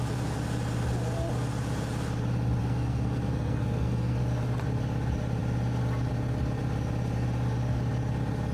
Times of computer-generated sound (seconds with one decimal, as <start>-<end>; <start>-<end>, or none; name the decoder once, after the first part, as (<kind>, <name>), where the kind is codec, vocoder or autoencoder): 2.6-4.2 (codec, SNAC)